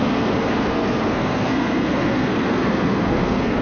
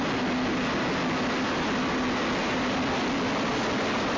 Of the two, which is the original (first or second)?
second